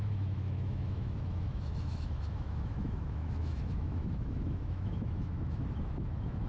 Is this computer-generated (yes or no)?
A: yes